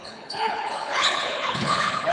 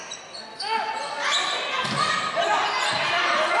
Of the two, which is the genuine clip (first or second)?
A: second